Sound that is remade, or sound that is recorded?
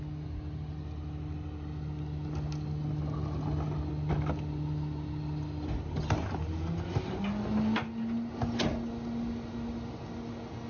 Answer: recorded